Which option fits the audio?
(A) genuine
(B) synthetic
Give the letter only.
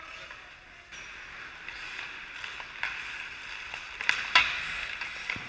A